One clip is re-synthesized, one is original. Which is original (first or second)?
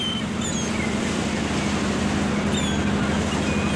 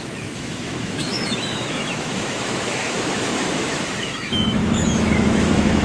first